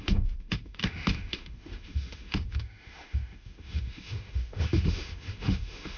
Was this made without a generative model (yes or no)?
no